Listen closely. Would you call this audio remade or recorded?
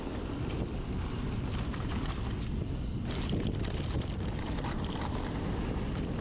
recorded